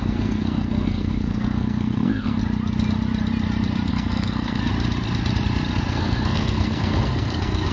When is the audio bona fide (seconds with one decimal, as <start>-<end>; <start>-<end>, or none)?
2.4-3.9; 4.7-5.9